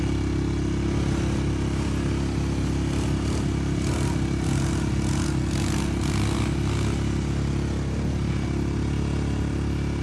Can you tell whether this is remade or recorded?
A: recorded